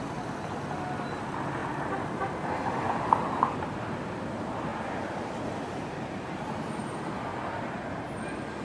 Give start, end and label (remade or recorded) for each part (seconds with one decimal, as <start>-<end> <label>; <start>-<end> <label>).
0.0-1.6 recorded; 1.6-3.8 remade; 3.8-7.3 recorded; 7.3-8.1 remade; 8.1-8.6 recorded